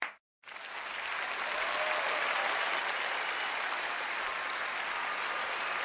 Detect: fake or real real